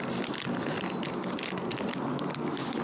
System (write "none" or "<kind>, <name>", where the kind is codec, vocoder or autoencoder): none